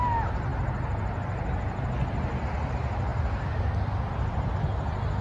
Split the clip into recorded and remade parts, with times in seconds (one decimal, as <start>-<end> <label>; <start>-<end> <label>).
0.0-5.2 recorded